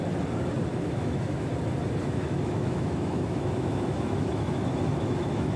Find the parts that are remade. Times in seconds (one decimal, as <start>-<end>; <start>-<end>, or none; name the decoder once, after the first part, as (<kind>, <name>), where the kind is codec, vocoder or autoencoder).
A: 0.7-1.5 (autoencoder, DAC-VAE); 2.0-5.6